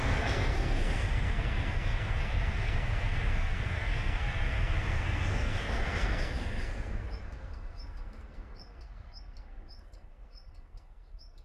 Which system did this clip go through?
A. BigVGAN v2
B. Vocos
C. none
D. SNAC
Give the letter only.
D